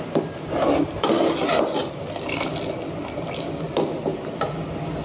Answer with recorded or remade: recorded